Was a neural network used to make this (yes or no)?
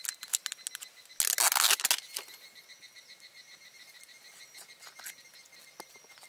no